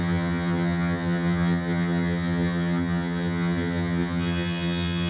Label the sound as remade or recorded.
remade